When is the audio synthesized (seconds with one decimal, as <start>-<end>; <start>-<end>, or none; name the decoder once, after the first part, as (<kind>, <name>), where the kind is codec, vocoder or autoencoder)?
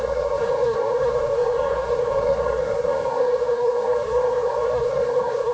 0.0-5.5 (codec, SNAC)